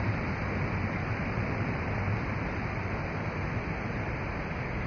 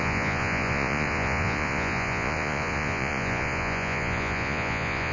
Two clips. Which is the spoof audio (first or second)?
second